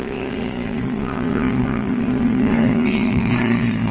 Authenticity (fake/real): fake